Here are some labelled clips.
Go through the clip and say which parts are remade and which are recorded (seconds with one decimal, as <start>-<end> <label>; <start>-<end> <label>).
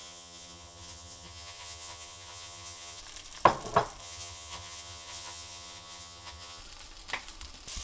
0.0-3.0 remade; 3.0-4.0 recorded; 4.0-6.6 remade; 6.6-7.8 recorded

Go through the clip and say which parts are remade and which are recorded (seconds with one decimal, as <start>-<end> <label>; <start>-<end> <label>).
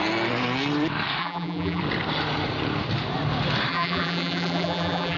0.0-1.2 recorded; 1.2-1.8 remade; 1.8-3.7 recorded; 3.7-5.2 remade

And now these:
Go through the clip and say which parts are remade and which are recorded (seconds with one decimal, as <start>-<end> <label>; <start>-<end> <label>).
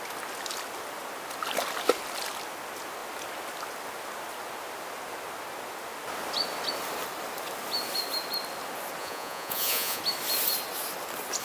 0.0-9.0 recorded; 9.0-10.0 remade; 10.0-11.4 recorded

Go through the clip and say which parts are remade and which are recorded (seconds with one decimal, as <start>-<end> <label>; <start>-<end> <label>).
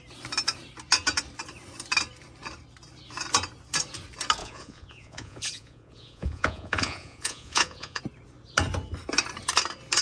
0.0-4.4 recorded; 4.4-8.0 remade; 8.0-10.0 recorded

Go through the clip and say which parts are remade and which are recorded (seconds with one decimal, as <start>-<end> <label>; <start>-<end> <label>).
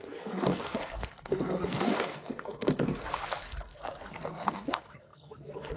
0.0-5.8 remade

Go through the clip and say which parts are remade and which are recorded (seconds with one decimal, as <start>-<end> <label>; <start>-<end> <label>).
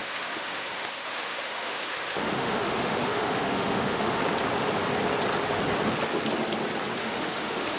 0.0-4.2 remade; 4.2-7.0 recorded; 7.0-7.8 remade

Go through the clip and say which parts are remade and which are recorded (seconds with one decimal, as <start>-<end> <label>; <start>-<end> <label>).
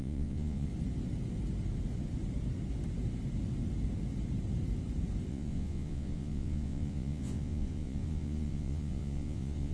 0.0-0.7 remade; 0.7-5.3 recorded; 5.3-9.7 remade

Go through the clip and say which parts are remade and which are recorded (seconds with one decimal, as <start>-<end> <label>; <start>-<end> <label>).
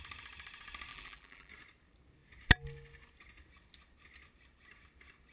0.0-0.9 recorded; 0.9-1.5 remade; 1.5-5.3 recorded